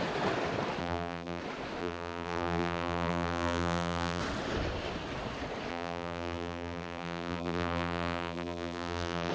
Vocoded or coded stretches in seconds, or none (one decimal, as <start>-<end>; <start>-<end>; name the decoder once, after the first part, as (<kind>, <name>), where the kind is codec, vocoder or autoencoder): 0.8-1.4 (vocoder, BigVGAN v2); 1.8-4.2; 5.7-9.3